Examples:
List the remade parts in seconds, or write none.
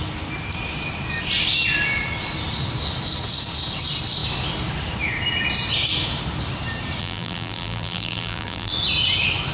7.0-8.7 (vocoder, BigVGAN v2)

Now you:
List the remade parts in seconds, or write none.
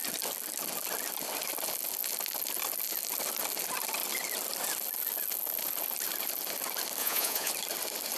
7.0-7.5 (vocoder, Vocos)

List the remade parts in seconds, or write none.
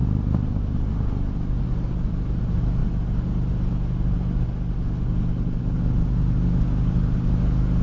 none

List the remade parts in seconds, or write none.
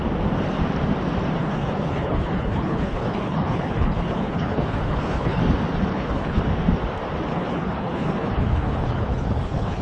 1.4-5.4 (codec, HILCodec); 5.9-6.4; 7.3-9.8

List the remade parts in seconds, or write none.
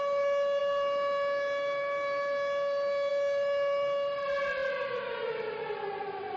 none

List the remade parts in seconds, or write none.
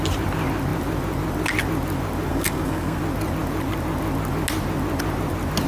2.3-3.0 (codec, SNAC)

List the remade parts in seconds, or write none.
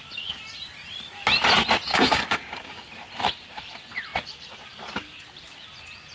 1.9-2.9 (codec, DAC)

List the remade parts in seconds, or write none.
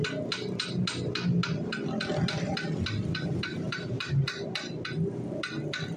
3.5-4.1 (vocoder, BigVGAN v2)